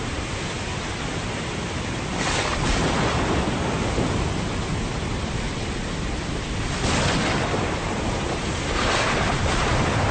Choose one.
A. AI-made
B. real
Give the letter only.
B